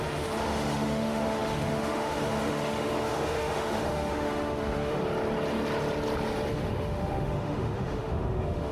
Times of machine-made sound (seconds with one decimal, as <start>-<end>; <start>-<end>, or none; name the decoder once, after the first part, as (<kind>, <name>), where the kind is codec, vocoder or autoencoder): 0.0-5.0 (autoencoder, DAC-VAE); 6.5-8.7